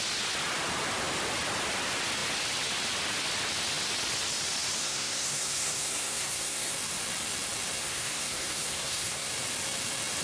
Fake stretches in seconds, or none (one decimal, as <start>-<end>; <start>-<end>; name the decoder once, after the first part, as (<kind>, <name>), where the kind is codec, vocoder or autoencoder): 4.8-6.7 (codec, SNAC); 7.8-9.3